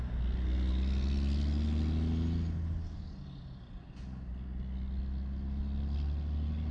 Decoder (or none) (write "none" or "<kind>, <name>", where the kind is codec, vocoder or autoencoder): none